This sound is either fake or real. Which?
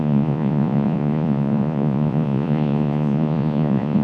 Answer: fake